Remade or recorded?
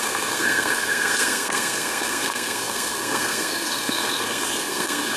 remade